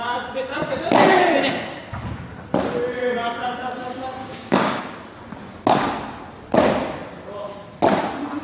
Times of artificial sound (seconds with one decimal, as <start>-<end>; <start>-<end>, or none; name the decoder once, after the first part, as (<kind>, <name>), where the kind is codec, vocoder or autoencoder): 4.2-4.8 (codec, DAC)